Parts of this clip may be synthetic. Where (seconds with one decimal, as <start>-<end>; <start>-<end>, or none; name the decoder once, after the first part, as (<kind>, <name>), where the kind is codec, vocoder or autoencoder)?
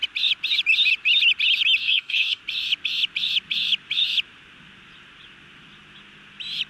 1.8-2.4 (codec, DAC)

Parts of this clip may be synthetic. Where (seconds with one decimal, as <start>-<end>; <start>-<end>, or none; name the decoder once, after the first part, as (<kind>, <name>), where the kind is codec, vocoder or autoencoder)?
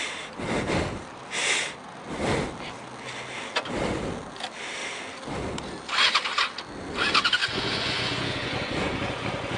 7.4-9.6 (vocoder, Vocos)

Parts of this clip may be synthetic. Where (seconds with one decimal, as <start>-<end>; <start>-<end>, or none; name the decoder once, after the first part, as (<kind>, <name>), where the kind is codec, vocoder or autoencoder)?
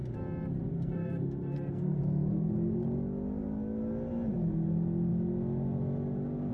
0.7-2.0 (codec, SNAC)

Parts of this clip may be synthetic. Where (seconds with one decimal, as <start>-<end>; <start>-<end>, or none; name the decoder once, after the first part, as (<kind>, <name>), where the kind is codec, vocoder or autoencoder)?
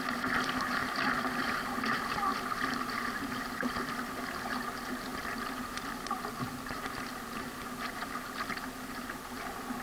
0.8-1.4 (vocoder, BigVGAN v2); 2.3-2.8; 5.1-9.0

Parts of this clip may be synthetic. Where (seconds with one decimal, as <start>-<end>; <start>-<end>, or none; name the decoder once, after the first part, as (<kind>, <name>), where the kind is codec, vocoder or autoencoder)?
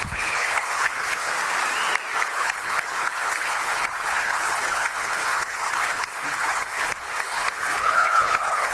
0.0-1.3 (codec, HILCodec); 2.1-8.7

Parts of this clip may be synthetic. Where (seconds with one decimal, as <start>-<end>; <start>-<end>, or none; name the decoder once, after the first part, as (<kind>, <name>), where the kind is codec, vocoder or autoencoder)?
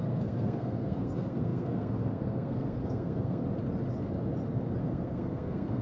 0.0-3.4 (codec, SNAC); 4.8-5.8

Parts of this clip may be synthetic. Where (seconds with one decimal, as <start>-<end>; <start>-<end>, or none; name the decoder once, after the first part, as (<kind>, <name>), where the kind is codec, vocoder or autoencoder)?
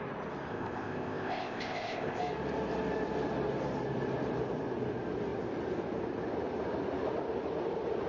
0.5-2.2 (codec, ZipCodec)